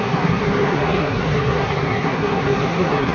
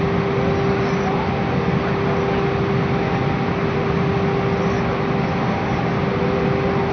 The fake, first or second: first